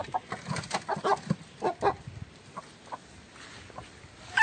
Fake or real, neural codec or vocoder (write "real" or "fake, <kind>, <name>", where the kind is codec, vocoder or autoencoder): real